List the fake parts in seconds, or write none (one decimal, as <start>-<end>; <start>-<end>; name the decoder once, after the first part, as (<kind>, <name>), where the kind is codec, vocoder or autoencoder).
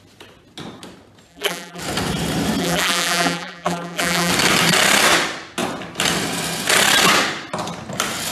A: 1.3-1.8 (vocoder, BigVGAN v2); 2.6-4.3